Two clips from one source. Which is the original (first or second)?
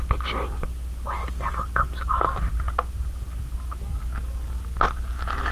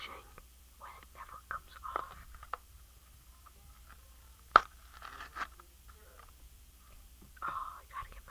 first